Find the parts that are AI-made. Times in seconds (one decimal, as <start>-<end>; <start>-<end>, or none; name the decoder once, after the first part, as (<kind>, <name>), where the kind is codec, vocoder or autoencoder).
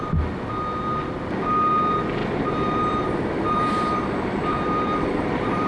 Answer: 2.2-5.7 (vocoder, BigVGAN v2)